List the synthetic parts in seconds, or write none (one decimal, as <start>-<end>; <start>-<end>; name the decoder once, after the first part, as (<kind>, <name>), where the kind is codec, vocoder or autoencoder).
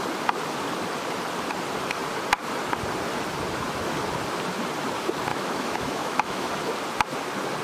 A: 5.3-6.5 (autoencoder, DAC-VAE)